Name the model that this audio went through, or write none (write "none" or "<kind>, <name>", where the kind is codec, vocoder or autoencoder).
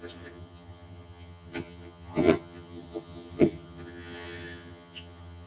vocoder, HiFi-GAN